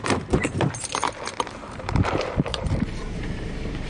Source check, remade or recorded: remade